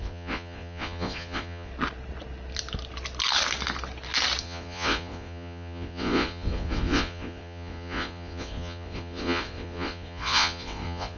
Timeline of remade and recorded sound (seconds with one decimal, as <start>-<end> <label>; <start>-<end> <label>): 0.0-1.7 remade; 1.7-4.4 recorded; 4.4-11.2 remade